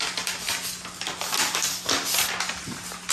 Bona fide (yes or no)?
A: yes